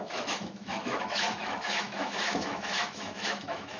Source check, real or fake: fake